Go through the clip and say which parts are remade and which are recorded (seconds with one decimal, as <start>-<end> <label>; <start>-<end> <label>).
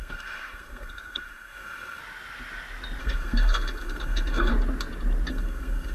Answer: 0.0-2.0 remade; 2.0-3.0 recorded; 3.0-4.5 remade; 4.5-5.3 recorded; 5.3-5.9 remade